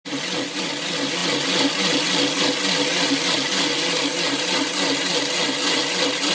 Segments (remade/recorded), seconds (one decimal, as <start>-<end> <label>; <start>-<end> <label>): 0.0-6.3 recorded